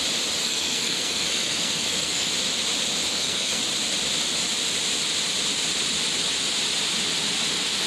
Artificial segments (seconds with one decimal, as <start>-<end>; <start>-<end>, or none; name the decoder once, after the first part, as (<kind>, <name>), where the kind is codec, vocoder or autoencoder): 0.4-2.3 (codec, SNAC); 3.1-3.6